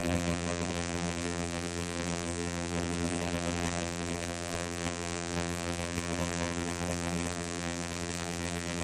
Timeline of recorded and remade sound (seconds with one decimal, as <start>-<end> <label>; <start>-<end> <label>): 0.0-8.8 remade